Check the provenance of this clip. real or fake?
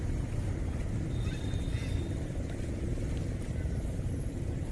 real